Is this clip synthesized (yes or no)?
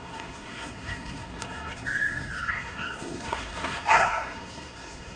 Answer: yes